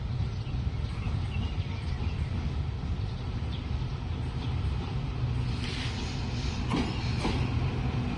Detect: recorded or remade recorded